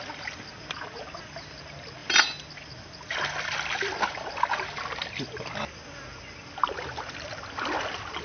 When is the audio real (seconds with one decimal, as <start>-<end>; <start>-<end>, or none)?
0.0-8.2